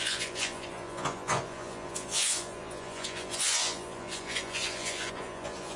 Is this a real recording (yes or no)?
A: no